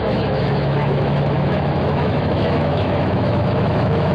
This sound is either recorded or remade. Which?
remade